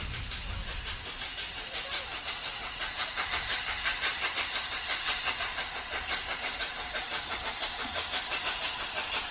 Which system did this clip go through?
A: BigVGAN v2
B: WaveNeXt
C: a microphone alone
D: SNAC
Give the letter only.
A